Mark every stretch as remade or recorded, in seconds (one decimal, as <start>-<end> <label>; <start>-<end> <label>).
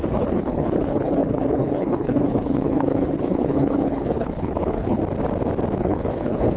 0.0-5.0 remade; 5.0-5.8 recorded; 5.8-6.6 remade